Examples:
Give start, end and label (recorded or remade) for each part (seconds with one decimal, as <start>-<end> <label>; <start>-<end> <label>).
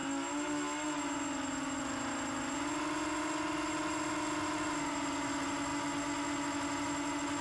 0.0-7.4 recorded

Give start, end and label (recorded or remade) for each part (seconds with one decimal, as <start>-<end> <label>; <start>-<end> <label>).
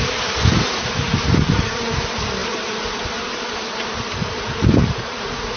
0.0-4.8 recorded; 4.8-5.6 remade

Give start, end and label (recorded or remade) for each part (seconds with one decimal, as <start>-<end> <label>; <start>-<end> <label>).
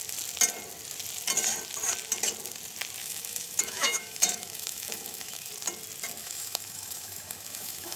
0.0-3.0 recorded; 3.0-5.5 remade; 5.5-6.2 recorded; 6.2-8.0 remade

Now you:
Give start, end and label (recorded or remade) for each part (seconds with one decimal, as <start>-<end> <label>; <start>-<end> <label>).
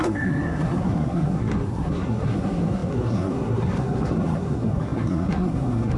0.0-6.0 remade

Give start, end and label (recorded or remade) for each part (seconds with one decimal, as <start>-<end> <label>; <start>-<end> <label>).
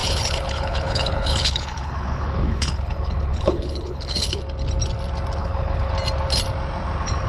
0.0-4.4 remade; 4.4-5.4 recorded; 5.4-5.9 remade; 5.9-7.3 recorded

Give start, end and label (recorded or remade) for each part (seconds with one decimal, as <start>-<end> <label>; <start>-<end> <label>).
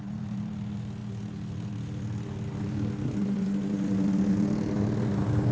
0.0-5.5 recorded